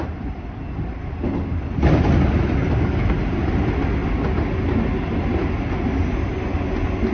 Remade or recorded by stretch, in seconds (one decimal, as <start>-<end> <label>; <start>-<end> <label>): 0.0-7.1 recorded